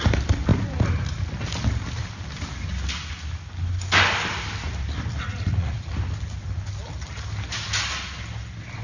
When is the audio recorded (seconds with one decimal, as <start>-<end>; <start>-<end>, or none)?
0.0-5.3; 5.9-8.8